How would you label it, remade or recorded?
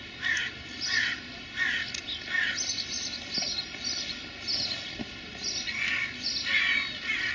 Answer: recorded